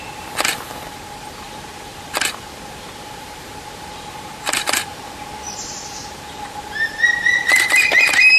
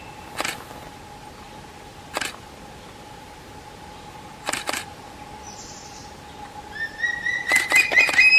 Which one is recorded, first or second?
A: second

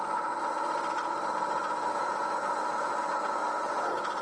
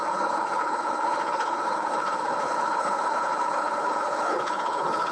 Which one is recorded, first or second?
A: first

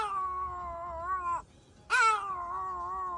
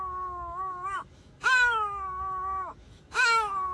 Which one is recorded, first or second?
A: first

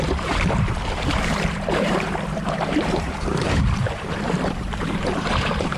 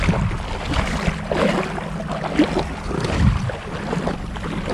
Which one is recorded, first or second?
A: second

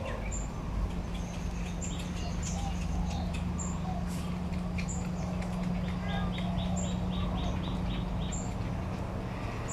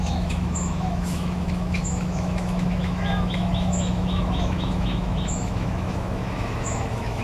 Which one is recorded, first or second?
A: first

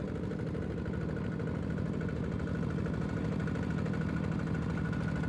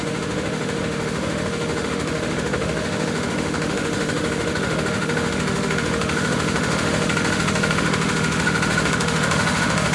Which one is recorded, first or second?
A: first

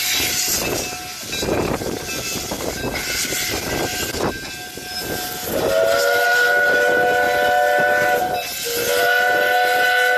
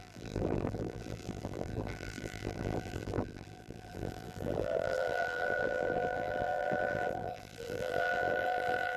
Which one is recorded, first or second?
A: first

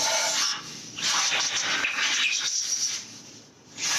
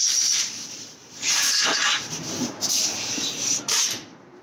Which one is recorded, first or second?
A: first